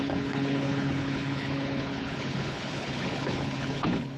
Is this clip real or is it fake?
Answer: fake